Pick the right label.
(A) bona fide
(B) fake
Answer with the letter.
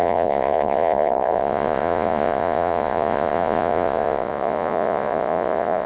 B